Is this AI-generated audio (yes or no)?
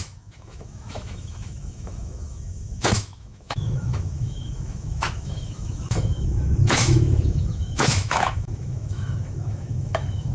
yes